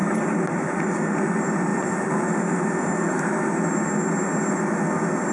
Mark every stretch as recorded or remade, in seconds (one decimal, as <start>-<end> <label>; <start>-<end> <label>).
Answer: 0.0-0.8 remade; 0.8-1.7 recorded; 1.7-2.7 remade; 2.7-5.3 recorded